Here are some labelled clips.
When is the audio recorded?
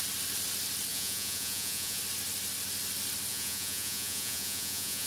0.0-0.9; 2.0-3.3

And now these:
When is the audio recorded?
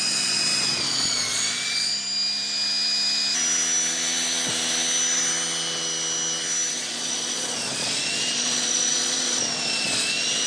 1.9-6.7